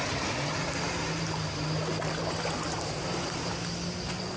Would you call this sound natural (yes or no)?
yes